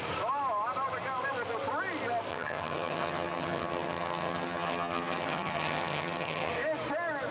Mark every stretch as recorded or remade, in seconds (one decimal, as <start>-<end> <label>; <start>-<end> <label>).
0.0-2.3 recorded; 2.3-6.5 remade; 6.5-7.3 recorded